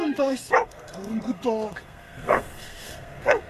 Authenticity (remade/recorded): remade